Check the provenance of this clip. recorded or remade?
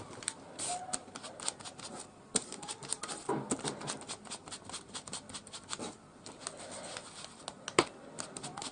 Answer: recorded